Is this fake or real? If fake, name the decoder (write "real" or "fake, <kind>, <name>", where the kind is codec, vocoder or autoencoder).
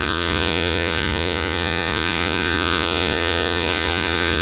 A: fake, vocoder, Vocos